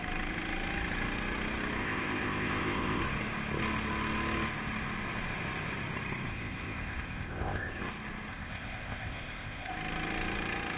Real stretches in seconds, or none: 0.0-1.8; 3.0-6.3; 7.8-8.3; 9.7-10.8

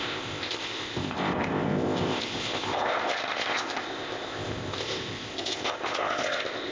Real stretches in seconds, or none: none

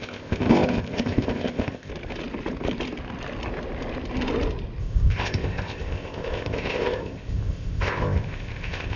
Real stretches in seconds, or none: 1.9-4.8